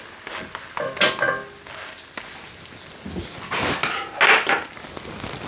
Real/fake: real